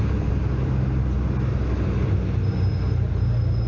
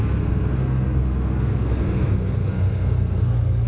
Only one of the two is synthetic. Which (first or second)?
second